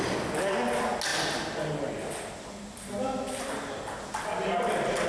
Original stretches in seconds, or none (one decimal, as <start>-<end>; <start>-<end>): 0.0-5.1